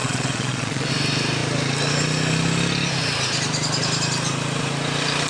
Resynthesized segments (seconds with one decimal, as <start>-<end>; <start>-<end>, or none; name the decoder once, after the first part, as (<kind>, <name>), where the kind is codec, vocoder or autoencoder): 0.0-0.9 (vocoder, Vocos)